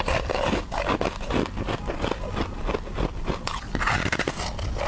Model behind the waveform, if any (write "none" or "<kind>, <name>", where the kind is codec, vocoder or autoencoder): none